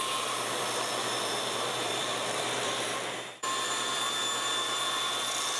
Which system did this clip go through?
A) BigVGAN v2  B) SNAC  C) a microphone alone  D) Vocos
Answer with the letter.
A